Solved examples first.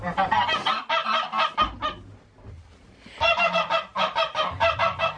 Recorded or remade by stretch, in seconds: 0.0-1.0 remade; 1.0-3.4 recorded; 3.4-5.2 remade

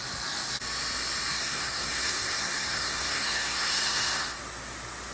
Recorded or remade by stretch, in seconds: 0.0-1.3 recorded; 1.3-4.4 remade; 4.4-5.1 recorded

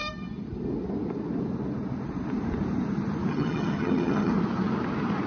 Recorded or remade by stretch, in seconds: 0.0-3.3 recorded; 3.3-4.3 remade; 4.3-5.3 recorded

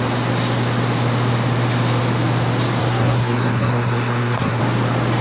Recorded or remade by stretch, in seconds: 0.0-2.8 recorded; 2.8-4.6 remade; 4.6-5.2 recorded

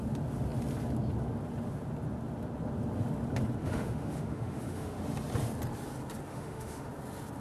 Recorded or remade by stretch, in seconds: 0.0-3.6 recorded; 3.6-5.0 remade; 5.0-6.3 recorded; 6.3-6.9 remade; 6.9-7.4 recorded

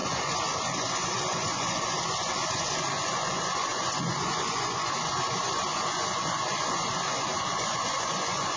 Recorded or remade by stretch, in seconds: 0.0-8.6 remade

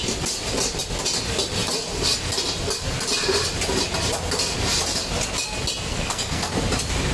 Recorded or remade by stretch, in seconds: 0.0-5.9 recorded; 5.9-6.5 remade; 6.5-7.1 recorded